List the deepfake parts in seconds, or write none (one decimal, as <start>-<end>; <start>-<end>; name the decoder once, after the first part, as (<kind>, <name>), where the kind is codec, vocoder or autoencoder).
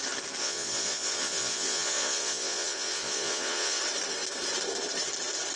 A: 0.4-3.8 (vocoder, Vocos)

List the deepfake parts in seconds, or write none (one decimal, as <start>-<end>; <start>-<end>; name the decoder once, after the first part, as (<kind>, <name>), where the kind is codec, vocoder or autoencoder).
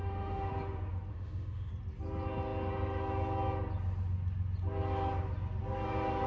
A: 0.0-0.5 (autoencoder, DAC-VAE); 1.1-1.7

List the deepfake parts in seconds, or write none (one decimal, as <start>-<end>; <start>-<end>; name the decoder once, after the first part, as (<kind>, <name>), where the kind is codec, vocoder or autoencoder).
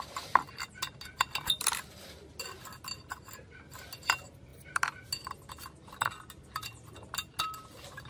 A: none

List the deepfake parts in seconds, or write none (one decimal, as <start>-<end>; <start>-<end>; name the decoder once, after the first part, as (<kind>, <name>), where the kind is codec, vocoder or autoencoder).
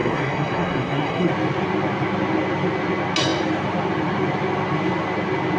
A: 0.0-1.3 (codec, SNAC)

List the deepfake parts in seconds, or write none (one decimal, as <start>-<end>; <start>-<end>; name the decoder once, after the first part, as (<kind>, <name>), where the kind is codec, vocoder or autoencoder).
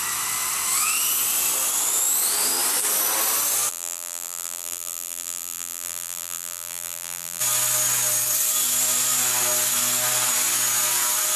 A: 3.7-7.4 (vocoder, BigVGAN v2)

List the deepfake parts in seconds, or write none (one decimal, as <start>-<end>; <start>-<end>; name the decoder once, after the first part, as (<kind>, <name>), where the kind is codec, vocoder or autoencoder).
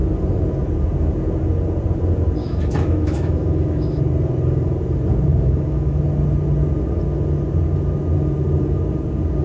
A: 2.4-4.0 (autoencoder, DAC-VAE); 5.3-6.0